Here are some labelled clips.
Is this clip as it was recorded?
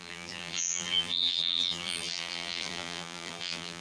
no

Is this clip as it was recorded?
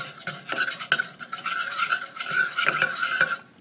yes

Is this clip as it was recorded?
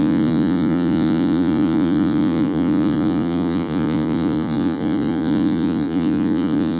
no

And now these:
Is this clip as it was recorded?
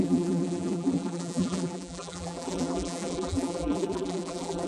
no